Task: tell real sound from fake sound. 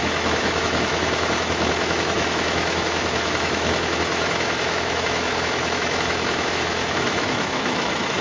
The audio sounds fake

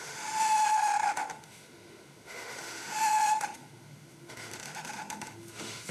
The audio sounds fake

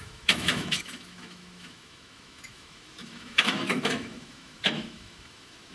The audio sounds fake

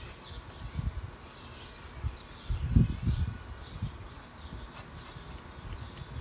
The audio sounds real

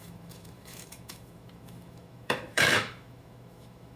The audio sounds fake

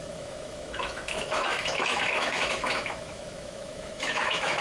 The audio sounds fake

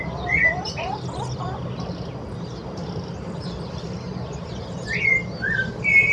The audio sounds real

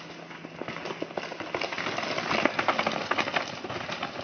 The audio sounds real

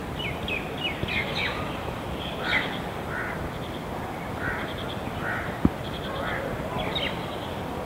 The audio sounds real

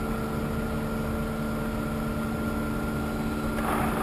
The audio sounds real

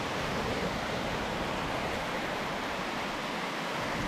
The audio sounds real